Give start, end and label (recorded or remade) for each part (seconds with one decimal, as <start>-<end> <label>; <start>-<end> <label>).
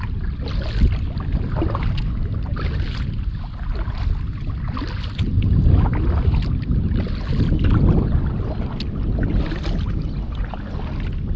0.0-11.4 recorded